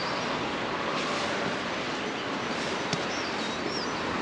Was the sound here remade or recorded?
recorded